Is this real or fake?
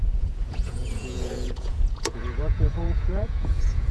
fake